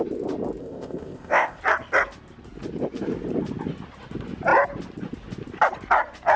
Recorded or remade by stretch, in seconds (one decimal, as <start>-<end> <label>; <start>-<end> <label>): 0.0-0.6 recorded; 0.6-1.6 remade; 1.6-6.4 recorded